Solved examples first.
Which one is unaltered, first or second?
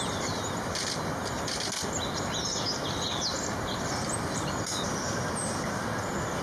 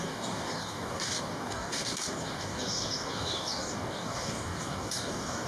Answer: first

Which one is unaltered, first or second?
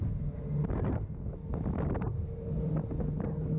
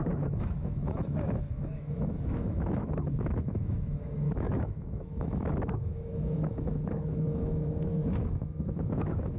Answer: first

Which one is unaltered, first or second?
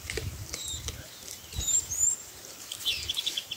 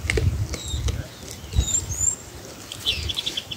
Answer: second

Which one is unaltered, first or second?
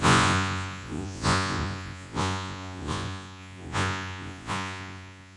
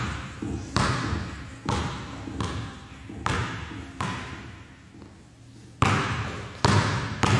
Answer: second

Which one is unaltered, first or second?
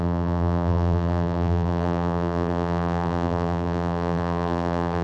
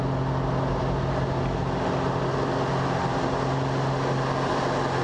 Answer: second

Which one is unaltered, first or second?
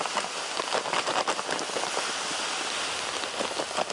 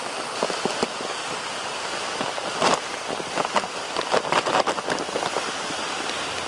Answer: first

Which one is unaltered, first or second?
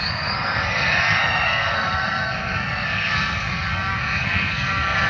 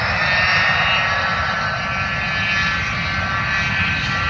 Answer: second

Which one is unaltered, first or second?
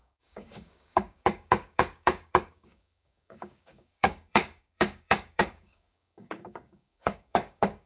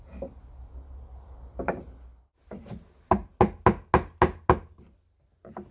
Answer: second